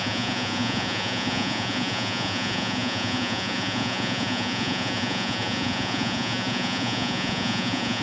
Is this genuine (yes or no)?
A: no